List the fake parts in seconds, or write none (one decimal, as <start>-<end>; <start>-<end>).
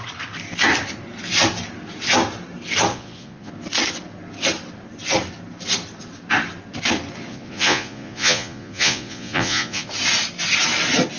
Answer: 2.9-3.5; 7.3-9.9